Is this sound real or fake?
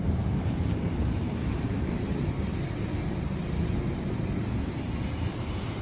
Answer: fake